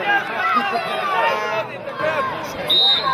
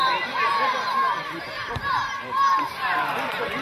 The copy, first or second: second